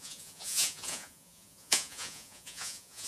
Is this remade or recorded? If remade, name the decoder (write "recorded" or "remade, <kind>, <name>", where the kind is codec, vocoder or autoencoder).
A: remade, vocoder, Vocos